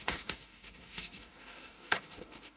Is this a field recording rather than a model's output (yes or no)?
no